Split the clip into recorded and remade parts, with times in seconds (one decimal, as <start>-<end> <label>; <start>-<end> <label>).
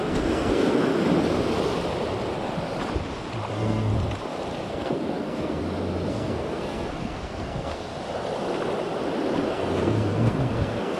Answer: 0.0-0.9 remade; 0.9-3.5 recorded; 3.5-3.9 remade; 3.9-4.7 recorded; 4.7-5.6 remade; 5.6-6.1 recorded; 6.1-7.9 remade; 7.9-9.5 recorded; 9.5-11.0 remade